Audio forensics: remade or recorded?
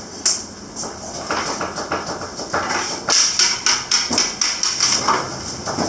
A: recorded